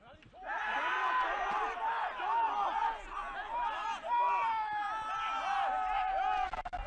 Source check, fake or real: real